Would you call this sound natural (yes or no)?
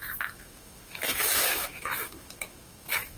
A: no